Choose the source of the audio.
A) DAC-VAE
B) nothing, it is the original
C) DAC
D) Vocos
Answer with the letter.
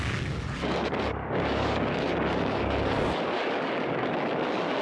C